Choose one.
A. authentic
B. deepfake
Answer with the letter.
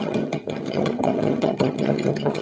B